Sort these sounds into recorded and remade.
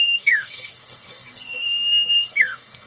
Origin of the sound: remade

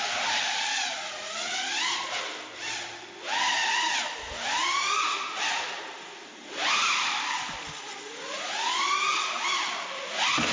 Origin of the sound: recorded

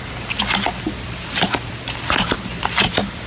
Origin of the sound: recorded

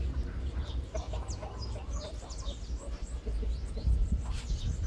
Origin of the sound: recorded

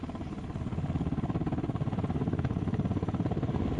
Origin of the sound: recorded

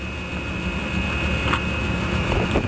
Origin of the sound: recorded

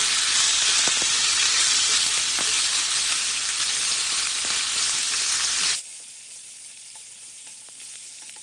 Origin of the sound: recorded